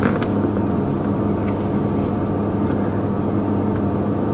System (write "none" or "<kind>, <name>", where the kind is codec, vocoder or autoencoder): none